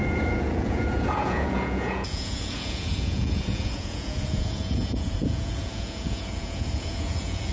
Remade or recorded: remade